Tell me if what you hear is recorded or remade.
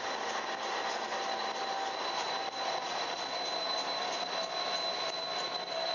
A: recorded